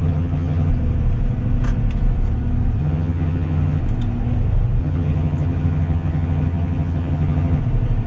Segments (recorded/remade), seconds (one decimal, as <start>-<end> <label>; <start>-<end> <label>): 0.0-0.7 remade; 0.7-2.8 recorded; 2.8-3.8 remade; 3.8-4.8 recorded; 4.8-7.6 remade; 7.6-8.1 recorded